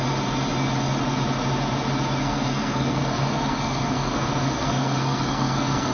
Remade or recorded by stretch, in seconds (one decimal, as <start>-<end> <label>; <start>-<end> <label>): 0.0-2.2 recorded; 2.2-5.9 remade